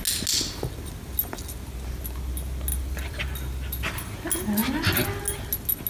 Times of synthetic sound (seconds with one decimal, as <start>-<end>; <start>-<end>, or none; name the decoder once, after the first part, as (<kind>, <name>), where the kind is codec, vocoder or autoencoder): 2.7-3.2 (vocoder, BigVGAN v2)